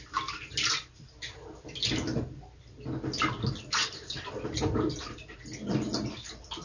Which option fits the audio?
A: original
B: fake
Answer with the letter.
A